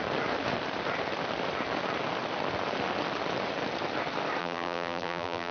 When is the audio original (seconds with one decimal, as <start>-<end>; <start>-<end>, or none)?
0.0-4.4